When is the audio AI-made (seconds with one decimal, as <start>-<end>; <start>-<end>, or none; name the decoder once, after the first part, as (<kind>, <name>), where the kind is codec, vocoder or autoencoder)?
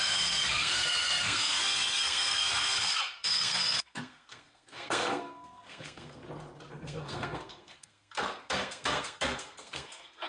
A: 0.0-6.2 (codec, SNAC); 6.7-10.3